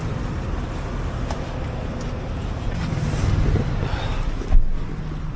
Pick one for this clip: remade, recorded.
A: recorded